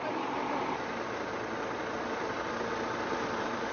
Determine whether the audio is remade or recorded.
remade